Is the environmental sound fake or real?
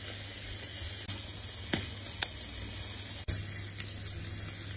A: real